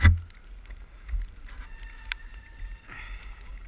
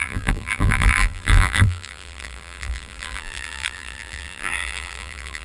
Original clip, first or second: first